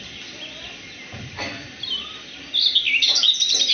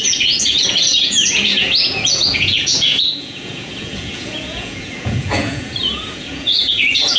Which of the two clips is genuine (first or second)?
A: first